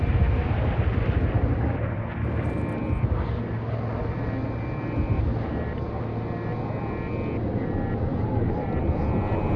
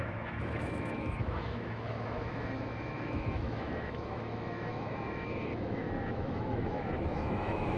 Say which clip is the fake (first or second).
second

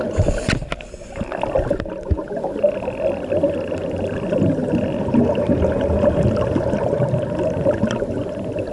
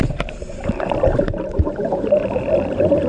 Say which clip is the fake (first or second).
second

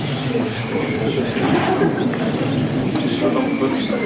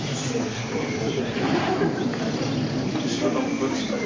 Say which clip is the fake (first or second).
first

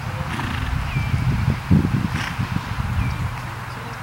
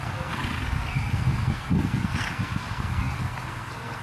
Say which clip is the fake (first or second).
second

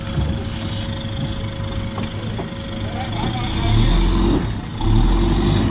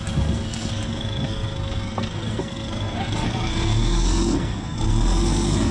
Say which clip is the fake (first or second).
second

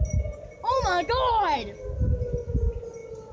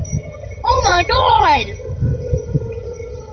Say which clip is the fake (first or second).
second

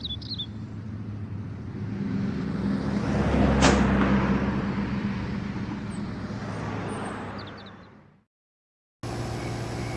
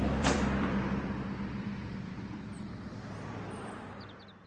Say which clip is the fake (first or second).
second